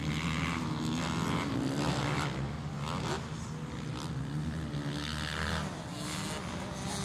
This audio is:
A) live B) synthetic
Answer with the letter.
A